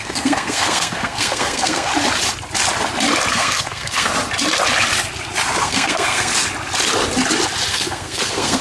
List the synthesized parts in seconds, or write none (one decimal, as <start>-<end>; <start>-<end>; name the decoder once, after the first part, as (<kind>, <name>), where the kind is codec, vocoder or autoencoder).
0.0-1.9 (codec, SNAC); 3.3-4.1; 5.6-6.3; 7.7-8.6